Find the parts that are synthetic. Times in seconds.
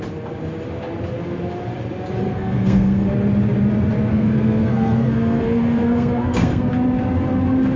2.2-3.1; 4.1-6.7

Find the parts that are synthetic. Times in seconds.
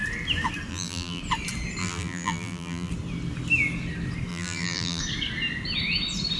0.7-1.2; 1.8-2.9; 4.3-5.0